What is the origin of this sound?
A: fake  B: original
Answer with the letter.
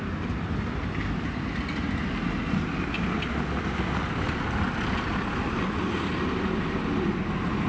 B